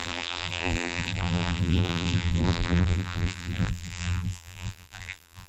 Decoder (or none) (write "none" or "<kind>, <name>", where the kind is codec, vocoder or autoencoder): vocoder, BigVGAN v2